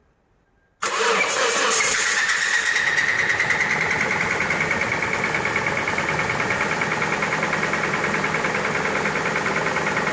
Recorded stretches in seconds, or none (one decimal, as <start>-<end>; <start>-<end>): 2.7-3.6; 4.4-10.1